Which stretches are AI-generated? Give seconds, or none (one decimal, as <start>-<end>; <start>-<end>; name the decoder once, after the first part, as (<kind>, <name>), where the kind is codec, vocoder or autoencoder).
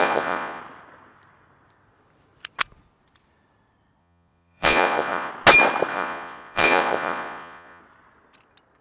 0.0-0.6 (vocoder, Vocos); 4.0-5.3; 5.9-7.8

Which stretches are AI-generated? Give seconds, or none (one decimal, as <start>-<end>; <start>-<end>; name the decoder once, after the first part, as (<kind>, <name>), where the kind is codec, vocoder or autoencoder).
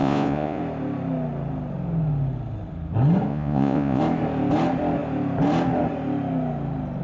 0.0-0.6 (vocoder, Vocos); 3.3-4.0